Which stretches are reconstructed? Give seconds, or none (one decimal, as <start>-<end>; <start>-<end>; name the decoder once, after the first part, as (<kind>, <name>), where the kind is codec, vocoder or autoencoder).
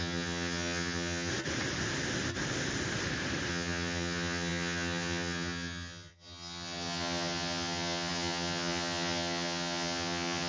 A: 0.0-1.3 (vocoder, HiFi-GAN); 3.5-10.5